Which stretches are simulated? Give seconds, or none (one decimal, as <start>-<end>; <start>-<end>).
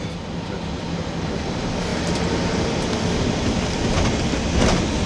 none